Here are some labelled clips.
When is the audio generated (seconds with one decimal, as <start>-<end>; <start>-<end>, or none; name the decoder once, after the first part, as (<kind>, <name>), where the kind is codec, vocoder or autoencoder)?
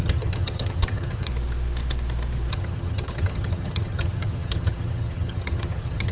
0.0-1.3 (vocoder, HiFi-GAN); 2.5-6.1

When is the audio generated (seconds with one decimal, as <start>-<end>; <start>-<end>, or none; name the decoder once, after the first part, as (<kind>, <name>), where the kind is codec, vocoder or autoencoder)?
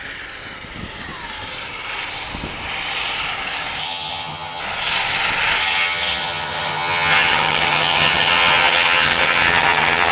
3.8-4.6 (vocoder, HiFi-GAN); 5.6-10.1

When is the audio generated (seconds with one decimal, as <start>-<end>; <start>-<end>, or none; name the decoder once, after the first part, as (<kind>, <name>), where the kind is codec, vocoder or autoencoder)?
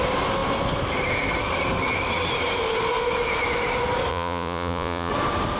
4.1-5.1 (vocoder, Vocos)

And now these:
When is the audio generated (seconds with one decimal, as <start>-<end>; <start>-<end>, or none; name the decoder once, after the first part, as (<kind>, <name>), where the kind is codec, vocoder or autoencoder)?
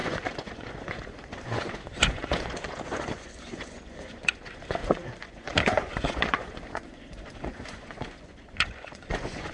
0.0-9.5 (vocoder, Vocos)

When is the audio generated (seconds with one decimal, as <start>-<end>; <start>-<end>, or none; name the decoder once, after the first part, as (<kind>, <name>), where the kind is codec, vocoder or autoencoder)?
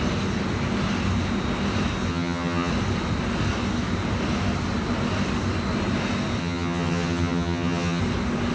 2.1-2.7 (vocoder, HiFi-GAN); 6.4-8.0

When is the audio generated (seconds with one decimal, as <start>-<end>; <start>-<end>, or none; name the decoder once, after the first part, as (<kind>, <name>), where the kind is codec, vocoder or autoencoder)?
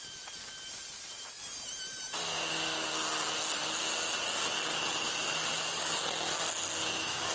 none